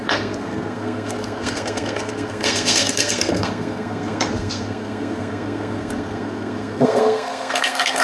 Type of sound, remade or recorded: remade